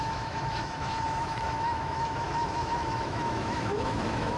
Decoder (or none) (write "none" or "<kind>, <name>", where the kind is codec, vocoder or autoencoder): autoencoder, DAC-VAE